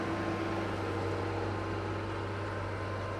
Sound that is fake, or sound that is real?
real